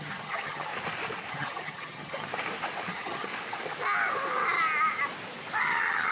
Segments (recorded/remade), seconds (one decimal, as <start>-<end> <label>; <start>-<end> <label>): 0.0-0.7 remade; 0.7-1.3 recorded; 1.3-2.3 remade; 2.3-2.9 recorded; 2.9-3.3 remade; 3.3-5.6 recorded; 5.6-6.1 remade